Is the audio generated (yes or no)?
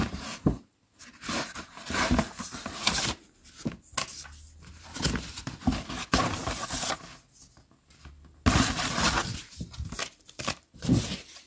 no